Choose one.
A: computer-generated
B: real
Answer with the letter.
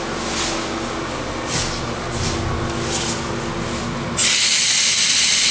B